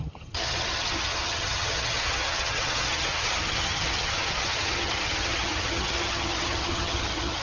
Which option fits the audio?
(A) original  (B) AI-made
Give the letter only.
B